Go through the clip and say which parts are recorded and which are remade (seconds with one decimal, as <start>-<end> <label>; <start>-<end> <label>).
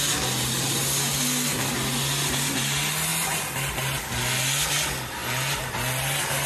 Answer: 0.0-6.5 recorded